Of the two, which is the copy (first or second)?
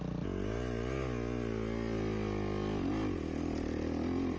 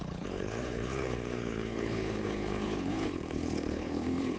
second